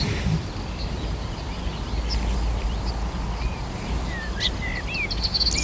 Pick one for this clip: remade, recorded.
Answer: recorded